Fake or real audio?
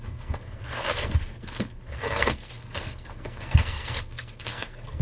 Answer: fake